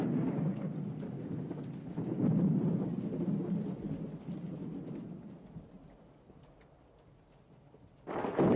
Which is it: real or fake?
real